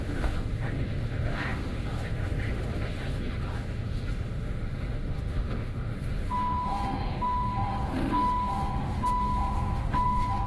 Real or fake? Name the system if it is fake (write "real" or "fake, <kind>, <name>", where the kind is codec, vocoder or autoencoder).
fake, autoencoder, DAC-VAE